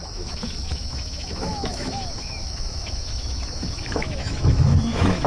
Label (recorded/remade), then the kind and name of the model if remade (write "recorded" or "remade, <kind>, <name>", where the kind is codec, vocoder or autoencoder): remade, autoencoder, DAC-VAE